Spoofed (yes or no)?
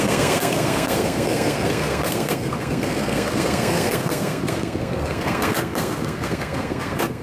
yes